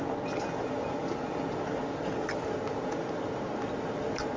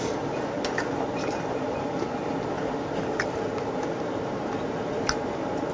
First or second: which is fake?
second